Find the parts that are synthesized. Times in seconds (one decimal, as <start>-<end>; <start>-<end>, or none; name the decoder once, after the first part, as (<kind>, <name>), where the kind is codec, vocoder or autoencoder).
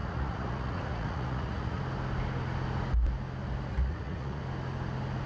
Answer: 0.0-1.8 (vocoder, Vocos); 3.7-4.4